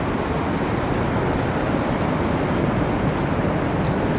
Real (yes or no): yes